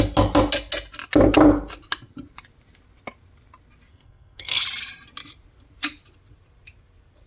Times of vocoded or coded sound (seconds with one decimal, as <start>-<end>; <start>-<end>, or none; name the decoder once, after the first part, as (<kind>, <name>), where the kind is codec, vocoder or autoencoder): 3.9-4.6 (codec, SNAC)